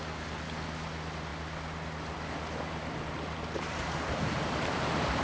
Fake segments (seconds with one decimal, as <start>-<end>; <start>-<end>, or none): none